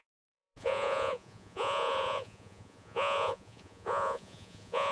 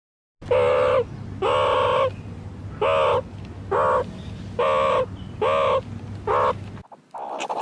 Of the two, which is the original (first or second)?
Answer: second